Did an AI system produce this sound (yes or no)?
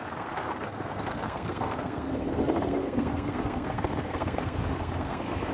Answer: yes